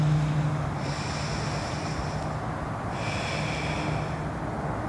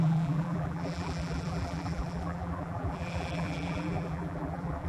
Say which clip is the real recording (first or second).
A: first